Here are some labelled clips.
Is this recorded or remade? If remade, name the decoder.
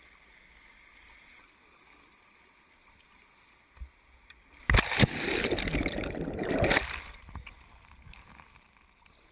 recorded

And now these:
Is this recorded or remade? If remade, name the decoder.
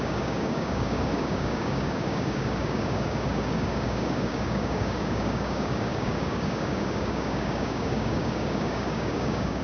remade, codec, DAC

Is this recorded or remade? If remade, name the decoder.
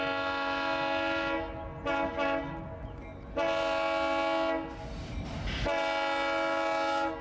recorded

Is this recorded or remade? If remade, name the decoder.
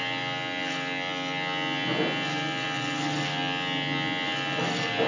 recorded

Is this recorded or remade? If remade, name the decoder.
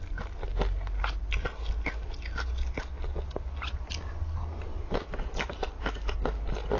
recorded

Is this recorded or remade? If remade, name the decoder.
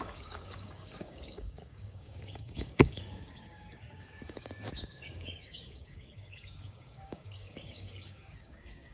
remade, codec, DAC